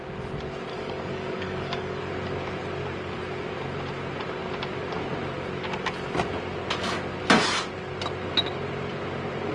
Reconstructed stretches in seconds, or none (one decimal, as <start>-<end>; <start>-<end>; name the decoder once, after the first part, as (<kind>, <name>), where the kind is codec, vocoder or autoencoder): 0.7-2.0 (codec, DAC)

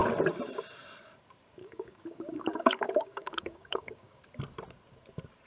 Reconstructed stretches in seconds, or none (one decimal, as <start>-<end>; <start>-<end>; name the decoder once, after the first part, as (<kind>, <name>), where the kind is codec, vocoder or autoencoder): 1.6-4.2 (codec, DAC)

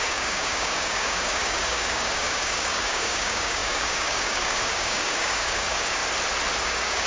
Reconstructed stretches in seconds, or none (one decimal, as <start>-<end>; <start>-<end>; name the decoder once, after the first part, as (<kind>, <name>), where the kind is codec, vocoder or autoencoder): 0.0-6.0 (codec, DAC); 6.6-7.1

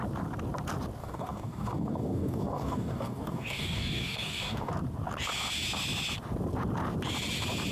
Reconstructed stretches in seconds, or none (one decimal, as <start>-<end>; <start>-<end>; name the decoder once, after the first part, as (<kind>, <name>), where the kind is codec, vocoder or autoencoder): 1.0-4.7 (codec, DAC)